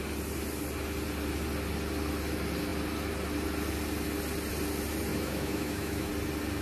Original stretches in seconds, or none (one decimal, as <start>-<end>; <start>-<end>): 0.0-5.1; 6.1-6.6